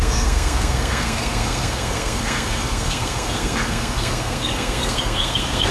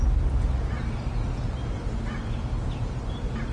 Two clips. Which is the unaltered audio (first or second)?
second